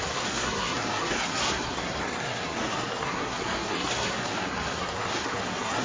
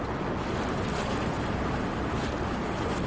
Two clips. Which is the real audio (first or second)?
second